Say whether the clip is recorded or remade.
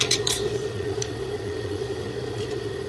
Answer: remade